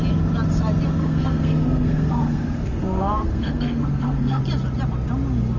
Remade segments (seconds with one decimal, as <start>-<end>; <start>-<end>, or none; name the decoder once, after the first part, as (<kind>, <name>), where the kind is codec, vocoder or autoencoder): 1.0-4.4 (codec, SNAC)